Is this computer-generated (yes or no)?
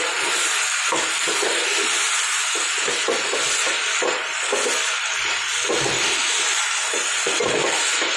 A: no